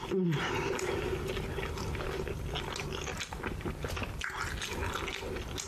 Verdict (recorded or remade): recorded